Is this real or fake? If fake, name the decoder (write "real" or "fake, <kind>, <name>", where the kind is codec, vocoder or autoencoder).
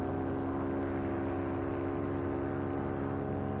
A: real